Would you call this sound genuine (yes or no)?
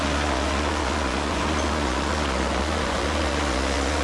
no